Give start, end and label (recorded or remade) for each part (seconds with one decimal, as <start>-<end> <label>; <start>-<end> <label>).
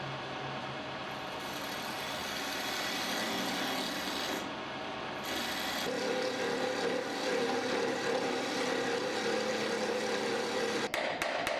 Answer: 0.0-11.6 recorded